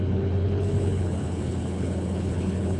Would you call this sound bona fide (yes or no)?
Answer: no